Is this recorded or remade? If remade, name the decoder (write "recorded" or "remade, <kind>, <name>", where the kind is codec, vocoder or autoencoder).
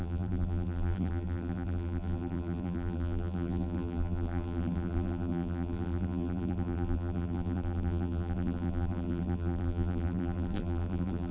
remade, vocoder, BigVGAN v2